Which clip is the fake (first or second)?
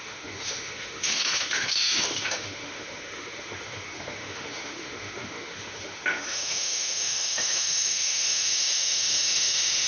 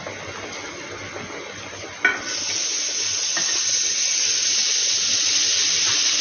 first